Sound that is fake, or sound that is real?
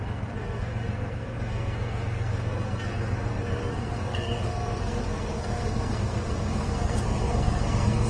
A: fake